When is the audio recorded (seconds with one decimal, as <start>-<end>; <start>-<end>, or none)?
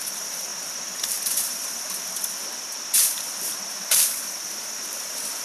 0.5-3.7